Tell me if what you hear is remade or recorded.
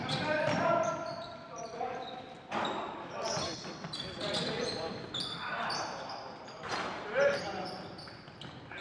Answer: remade